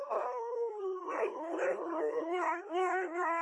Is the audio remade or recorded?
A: remade